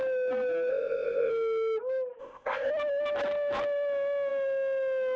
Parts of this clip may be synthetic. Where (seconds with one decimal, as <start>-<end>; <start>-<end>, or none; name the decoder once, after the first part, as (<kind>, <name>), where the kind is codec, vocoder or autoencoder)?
0.7-1.3 (codec, ZipCodec); 2.2-2.7